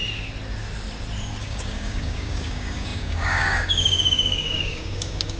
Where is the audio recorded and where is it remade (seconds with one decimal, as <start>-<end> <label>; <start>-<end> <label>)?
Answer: 0.0-1.4 recorded; 1.4-5.4 remade